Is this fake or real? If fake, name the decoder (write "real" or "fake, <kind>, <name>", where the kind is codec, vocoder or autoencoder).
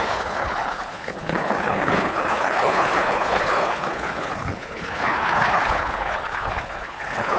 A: fake, codec, HILCodec